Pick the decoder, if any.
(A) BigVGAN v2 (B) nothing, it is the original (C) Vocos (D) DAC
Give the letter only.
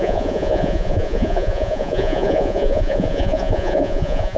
C